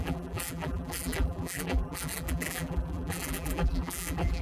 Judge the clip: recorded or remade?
remade